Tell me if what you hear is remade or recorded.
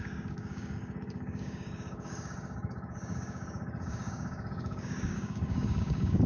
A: remade